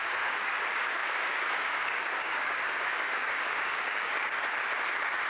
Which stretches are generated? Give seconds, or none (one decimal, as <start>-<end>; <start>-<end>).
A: 0.0-0.6; 1.0-4.2